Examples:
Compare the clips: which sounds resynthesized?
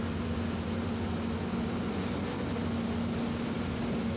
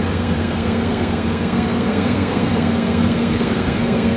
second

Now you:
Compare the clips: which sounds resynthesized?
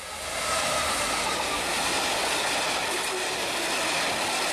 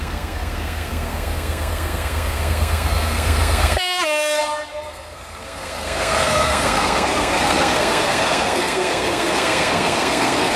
second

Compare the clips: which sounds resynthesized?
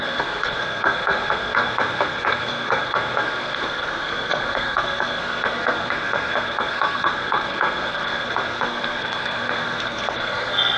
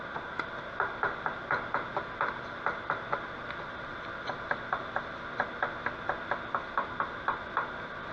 first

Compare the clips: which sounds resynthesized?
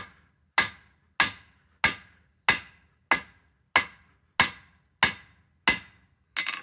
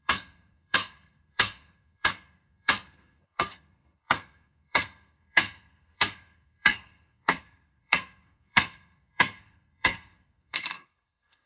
second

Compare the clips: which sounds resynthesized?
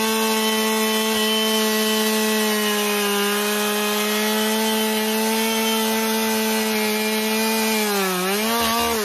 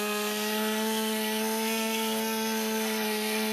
second